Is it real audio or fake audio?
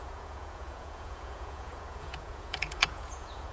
fake